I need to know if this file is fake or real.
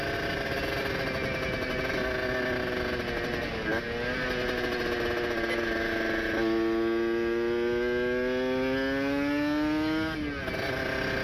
real